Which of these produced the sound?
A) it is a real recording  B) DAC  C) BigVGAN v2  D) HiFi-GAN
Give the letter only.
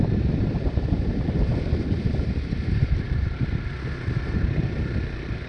C